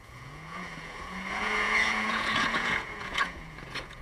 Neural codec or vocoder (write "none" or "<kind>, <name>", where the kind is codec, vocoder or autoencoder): vocoder, Vocos